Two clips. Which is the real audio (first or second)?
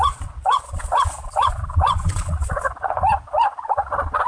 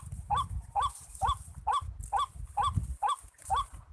second